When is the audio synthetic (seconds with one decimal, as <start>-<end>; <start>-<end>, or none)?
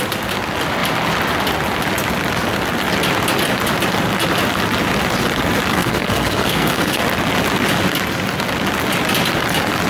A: 5.7-7.0